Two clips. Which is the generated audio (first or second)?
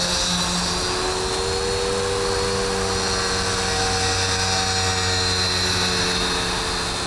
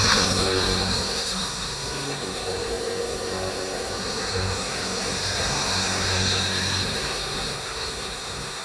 second